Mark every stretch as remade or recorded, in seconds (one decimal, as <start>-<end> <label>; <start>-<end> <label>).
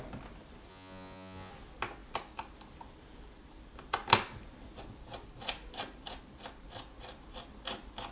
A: 0.0-0.7 recorded; 0.7-1.5 remade; 1.5-8.1 recorded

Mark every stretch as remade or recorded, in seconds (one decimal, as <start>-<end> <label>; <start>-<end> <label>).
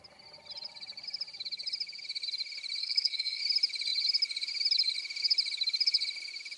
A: 0.0-2.8 recorded; 2.8-3.4 remade; 3.4-6.6 recorded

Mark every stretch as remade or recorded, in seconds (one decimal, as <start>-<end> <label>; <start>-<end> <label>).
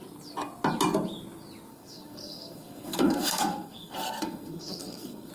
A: 0.0-1.7 recorded; 1.7-5.3 remade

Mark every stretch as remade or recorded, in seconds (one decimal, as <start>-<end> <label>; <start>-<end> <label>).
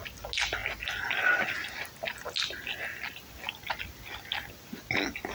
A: 0.0-5.3 recorded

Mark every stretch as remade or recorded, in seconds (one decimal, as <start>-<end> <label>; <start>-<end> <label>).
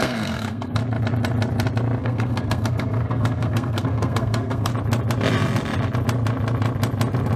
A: 0.0-0.8 remade; 0.8-2.0 recorded; 2.0-4.7 remade; 4.7-7.4 recorded